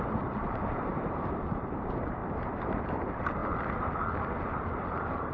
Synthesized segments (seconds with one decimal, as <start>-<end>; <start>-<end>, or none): 0.0-2.2; 2.7-3.4; 4.5-5.3